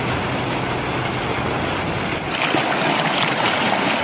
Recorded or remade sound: recorded